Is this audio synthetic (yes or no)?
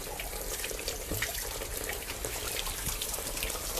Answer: yes